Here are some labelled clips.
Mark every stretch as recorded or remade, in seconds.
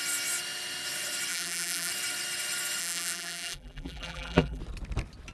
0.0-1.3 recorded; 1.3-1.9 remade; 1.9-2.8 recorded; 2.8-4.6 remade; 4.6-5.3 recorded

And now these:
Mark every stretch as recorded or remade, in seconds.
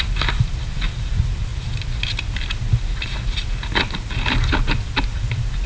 0.0-1.5 remade; 1.5-4.9 recorded; 4.9-5.7 remade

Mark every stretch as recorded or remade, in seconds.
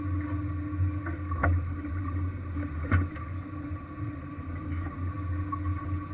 0.0-1.4 recorded; 1.4-5.1 remade; 5.1-6.1 recorded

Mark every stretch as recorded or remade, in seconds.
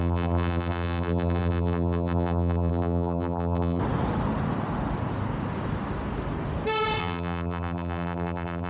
0.0-3.8 remade; 3.8-7.0 recorded; 7.0-8.7 remade